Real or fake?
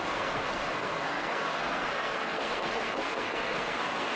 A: fake